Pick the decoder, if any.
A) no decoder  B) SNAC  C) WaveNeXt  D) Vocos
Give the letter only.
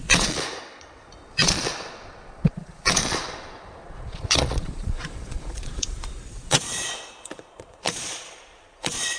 D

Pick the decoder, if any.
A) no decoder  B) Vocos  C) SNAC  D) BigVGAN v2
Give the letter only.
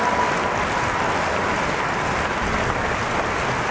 A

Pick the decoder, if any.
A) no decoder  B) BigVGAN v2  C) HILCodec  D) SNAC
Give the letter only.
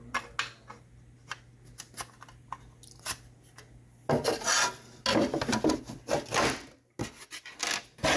A